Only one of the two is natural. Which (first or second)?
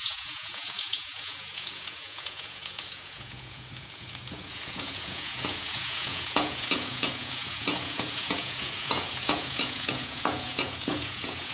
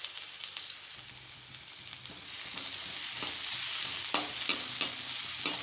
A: second